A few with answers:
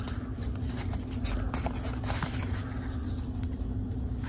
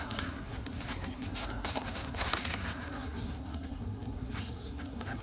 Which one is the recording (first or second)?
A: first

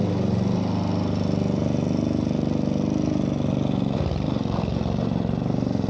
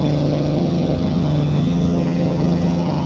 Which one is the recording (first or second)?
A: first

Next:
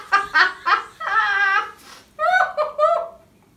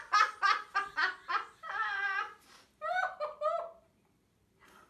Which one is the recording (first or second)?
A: first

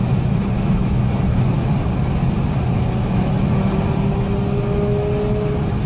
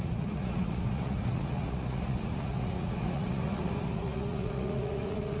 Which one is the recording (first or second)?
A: first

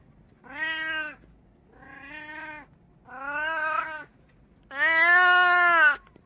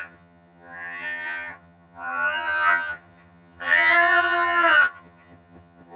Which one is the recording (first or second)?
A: first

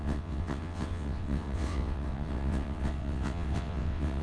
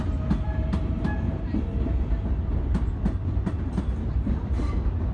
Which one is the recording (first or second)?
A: second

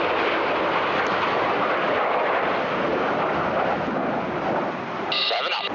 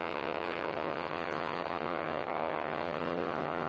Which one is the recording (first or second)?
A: first